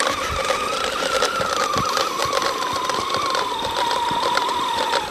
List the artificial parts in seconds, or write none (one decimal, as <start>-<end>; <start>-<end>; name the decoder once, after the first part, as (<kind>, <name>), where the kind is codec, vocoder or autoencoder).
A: none